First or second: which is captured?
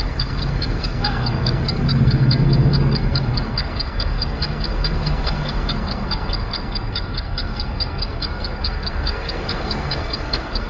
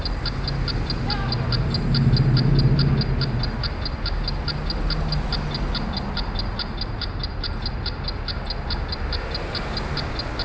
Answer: second